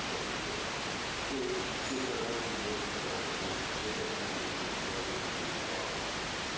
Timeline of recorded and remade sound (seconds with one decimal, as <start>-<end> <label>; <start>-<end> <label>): 0.0-6.6 recorded